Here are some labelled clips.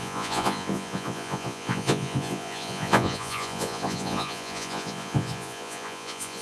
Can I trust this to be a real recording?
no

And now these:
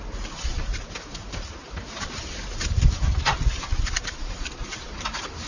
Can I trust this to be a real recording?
no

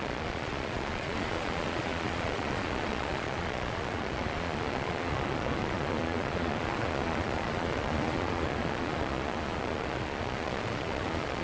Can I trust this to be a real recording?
no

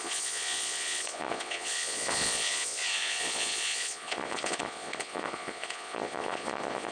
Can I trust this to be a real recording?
no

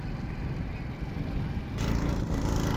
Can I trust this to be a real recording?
yes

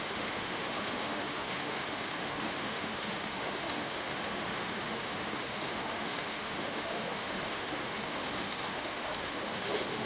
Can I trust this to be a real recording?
no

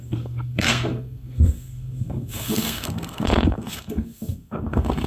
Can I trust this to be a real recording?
no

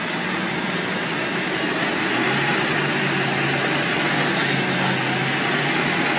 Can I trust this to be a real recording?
yes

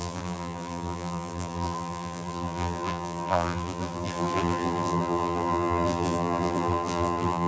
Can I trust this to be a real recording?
no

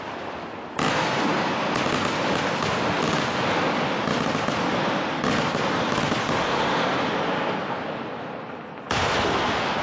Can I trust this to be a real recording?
yes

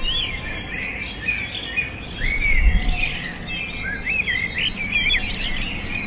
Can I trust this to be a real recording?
yes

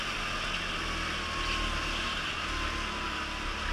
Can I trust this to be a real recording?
yes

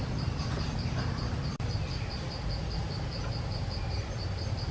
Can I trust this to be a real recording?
yes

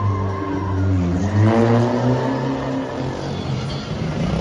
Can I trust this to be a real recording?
yes